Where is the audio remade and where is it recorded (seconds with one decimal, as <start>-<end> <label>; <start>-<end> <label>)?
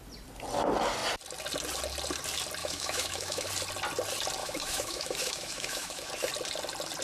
0.0-2.6 recorded; 2.6-3.5 remade; 3.5-4.4 recorded; 4.4-6.1 remade; 6.1-7.0 recorded